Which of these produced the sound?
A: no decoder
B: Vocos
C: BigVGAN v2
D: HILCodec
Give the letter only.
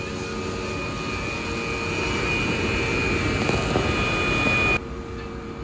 A